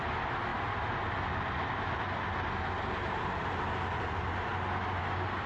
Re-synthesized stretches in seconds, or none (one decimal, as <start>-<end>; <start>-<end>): none